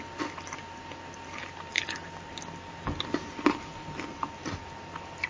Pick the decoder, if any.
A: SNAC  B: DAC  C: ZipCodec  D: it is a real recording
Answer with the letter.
D